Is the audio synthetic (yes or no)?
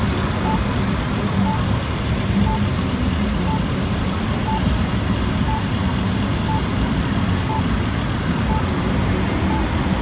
no